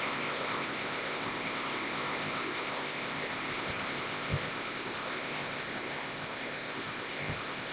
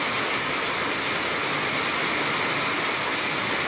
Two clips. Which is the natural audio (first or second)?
second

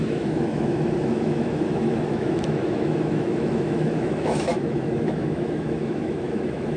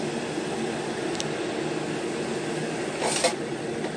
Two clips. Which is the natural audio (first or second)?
second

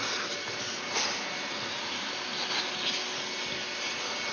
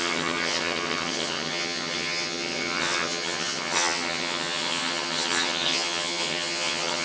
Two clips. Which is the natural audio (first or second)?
first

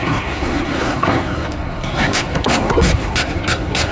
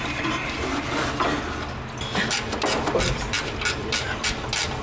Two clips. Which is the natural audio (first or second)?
second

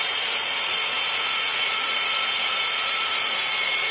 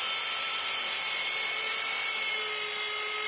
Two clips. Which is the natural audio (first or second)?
second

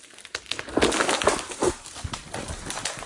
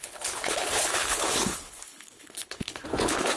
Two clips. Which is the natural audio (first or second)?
first